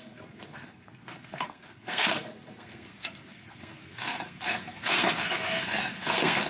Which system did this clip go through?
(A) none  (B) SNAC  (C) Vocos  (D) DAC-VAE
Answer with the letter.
B